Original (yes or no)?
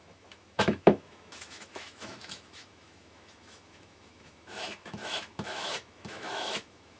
no